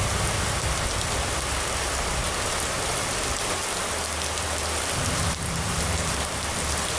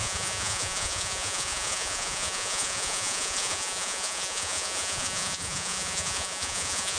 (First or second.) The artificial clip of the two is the second